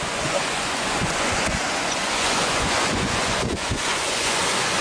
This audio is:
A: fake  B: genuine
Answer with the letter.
A